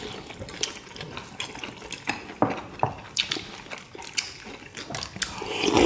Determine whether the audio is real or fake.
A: real